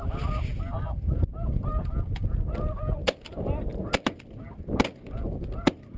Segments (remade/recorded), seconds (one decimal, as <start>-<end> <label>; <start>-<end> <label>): 0.0-6.0 recorded